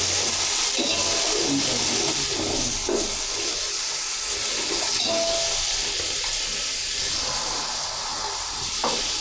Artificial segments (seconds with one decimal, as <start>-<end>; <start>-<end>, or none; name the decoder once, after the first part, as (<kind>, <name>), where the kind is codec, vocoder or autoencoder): none